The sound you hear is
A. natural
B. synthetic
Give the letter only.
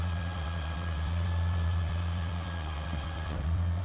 B